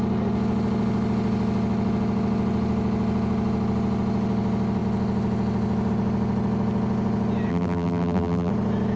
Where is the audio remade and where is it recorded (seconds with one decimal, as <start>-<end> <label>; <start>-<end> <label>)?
0.0-7.5 recorded; 7.5-8.5 remade; 8.5-9.0 recorded